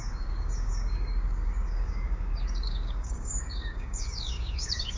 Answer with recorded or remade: remade